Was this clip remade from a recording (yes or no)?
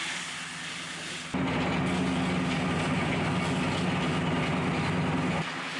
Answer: no